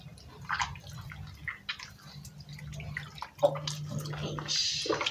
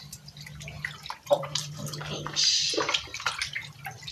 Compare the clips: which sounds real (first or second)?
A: first